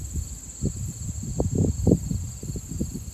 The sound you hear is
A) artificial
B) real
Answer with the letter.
B